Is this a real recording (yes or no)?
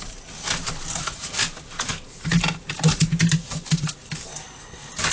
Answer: yes